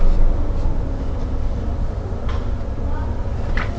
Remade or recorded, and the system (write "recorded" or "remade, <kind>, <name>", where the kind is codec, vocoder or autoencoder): recorded